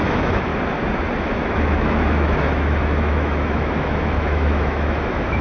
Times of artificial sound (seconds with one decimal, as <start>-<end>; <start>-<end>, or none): 0.0-0.5; 1.2-5.4